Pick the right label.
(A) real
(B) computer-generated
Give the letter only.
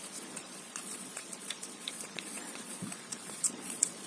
B